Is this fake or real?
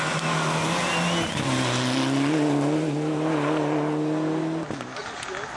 real